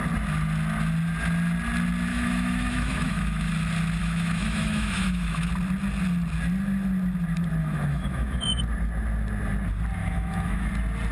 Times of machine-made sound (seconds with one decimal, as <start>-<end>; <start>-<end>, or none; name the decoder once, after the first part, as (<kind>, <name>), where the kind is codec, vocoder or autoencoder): 2.1-3.5 (autoencoder, DAC-VAE); 4.0-5.5; 7.6-8.6; 10.0-10.7